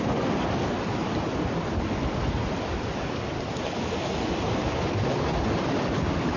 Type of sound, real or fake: real